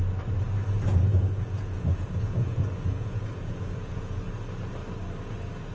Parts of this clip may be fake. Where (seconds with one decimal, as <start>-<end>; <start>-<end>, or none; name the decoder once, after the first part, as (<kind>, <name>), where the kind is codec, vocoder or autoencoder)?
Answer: 0.9-4.3 (vocoder, Vocos)